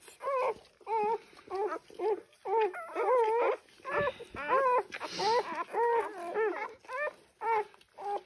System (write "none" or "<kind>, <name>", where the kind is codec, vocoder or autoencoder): none